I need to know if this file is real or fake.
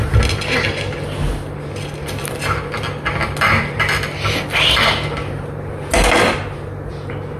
real